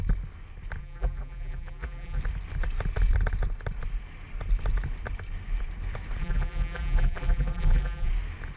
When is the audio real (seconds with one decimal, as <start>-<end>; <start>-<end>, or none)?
0.0-0.8; 2.2-6.2; 8.1-8.6